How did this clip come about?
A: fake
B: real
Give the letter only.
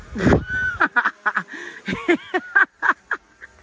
B